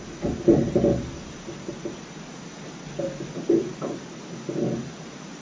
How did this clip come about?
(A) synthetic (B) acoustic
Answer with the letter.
B